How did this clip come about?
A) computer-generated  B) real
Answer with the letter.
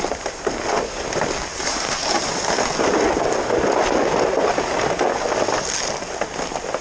B